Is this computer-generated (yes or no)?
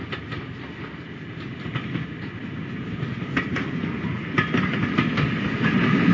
no